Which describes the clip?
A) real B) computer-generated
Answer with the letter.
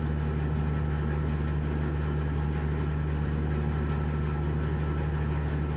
A